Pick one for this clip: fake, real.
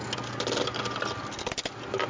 real